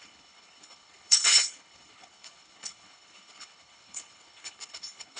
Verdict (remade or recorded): remade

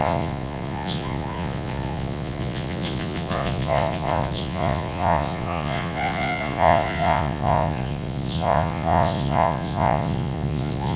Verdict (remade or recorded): remade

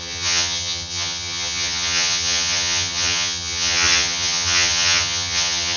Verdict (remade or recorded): remade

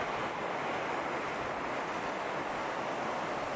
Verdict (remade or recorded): recorded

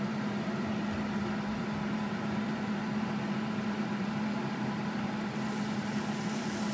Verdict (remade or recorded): remade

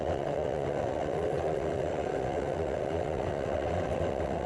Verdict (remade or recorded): remade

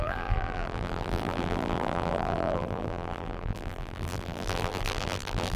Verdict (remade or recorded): remade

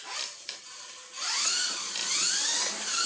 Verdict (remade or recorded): recorded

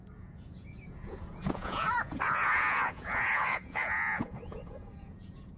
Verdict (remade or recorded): remade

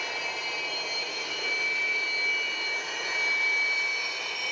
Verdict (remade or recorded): recorded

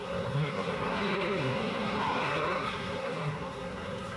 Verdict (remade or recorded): remade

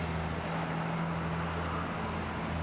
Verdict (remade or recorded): recorded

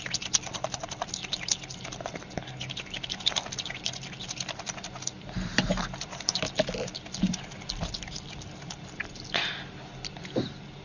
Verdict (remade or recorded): recorded